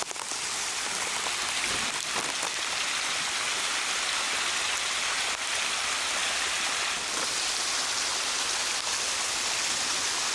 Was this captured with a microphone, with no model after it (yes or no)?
yes